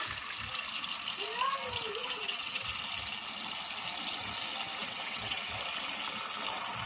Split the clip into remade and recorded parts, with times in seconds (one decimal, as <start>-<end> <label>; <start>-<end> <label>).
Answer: 0.0-2.0 recorded; 2.0-2.7 remade; 2.7-4.7 recorded; 4.7-5.5 remade; 5.5-6.9 recorded

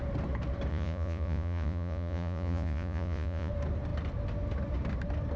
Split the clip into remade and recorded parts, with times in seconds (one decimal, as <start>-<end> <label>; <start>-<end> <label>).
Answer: 0.0-0.7 recorded; 0.7-3.5 remade; 3.5-5.4 recorded

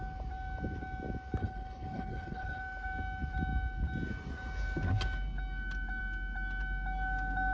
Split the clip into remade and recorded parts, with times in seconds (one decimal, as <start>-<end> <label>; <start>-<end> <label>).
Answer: 0.0-1.4 recorded; 1.4-2.6 remade; 2.6-7.5 recorded

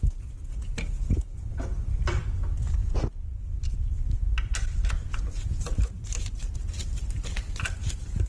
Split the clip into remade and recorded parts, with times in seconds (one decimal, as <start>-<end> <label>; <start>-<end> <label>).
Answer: 0.0-8.3 recorded